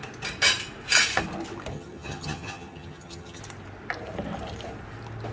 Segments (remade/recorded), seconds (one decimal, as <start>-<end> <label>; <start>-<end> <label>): 0.0-1.7 recorded; 1.7-3.4 remade; 3.4-5.3 recorded